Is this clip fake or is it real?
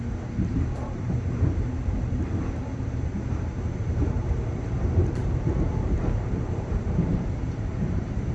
fake